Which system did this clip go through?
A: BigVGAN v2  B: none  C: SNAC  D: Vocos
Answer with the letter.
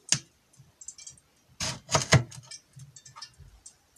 B